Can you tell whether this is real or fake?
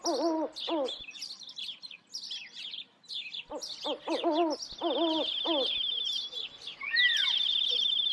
real